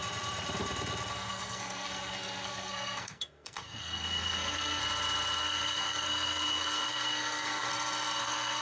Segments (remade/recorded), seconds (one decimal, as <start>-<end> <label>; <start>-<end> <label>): 0.0-1.1 recorded; 1.1-4.8 remade; 4.8-5.4 recorded; 5.4-7.7 remade; 7.7-8.2 recorded; 8.2-8.6 remade